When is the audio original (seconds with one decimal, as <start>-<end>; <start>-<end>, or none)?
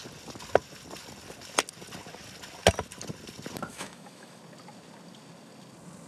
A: 0.0-3.7; 4.4-6.1